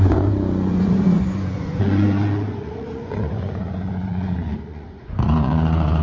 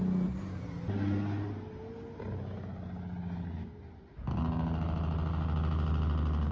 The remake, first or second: first